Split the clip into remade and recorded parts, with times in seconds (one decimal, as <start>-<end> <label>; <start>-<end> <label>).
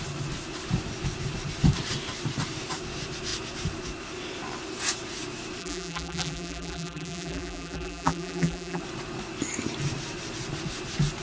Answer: 0.0-5.6 recorded; 5.6-8.8 remade; 8.8-11.2 recorded